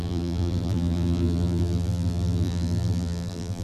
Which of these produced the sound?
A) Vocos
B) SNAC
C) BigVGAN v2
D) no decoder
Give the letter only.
C